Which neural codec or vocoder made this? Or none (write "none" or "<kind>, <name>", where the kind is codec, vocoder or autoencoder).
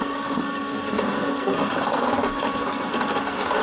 codec, SNAC